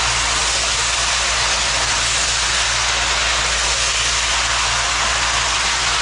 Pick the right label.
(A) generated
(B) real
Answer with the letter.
B